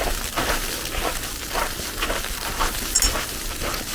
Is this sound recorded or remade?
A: recorded